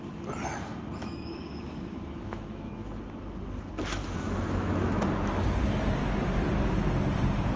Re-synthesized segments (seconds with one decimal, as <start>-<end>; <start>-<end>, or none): 1.0-2.7; 4.0-5.4